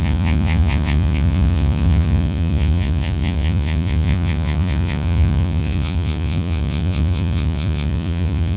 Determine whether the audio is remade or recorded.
remade